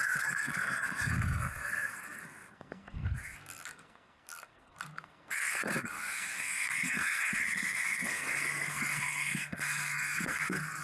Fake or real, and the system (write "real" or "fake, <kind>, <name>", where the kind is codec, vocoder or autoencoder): fake, codec, SNAC